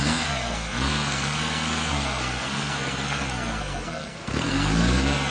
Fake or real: fake